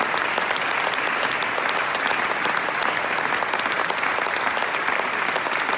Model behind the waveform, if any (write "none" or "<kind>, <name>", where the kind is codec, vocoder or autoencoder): none